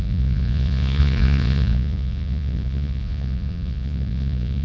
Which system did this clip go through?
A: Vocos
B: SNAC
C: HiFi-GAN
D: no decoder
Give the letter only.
A